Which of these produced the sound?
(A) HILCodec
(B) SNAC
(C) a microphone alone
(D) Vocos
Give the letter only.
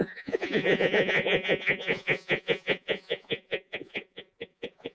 D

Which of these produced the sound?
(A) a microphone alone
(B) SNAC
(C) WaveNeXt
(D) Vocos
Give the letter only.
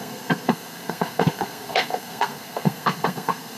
B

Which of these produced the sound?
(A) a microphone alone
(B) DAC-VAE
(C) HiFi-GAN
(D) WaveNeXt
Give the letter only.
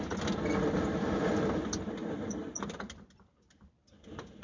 A